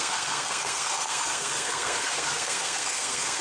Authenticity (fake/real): fake